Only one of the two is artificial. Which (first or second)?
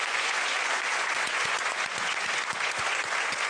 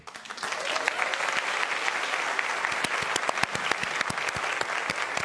first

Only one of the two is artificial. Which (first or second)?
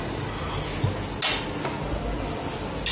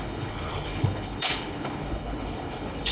second